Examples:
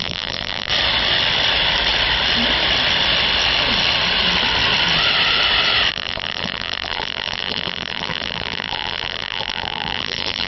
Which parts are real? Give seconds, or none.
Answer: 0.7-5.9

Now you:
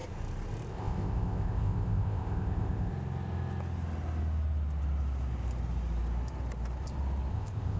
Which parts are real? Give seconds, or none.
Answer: 0.0-0.7; 2.9-7.3